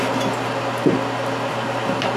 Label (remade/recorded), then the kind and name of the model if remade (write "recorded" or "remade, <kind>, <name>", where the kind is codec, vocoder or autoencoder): recorded